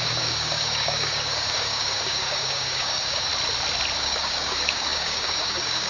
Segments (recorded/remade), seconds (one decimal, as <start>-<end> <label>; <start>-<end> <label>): 0.0-3.3 remade; 3.3-4.0 recorded; 4.0-5.9 remade